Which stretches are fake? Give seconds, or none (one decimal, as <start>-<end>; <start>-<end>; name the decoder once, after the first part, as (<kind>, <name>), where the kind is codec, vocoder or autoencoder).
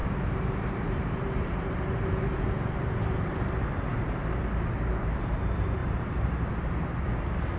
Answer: 0.0-3.0 (vocoder, BigVGAN v2); 5.8-6.7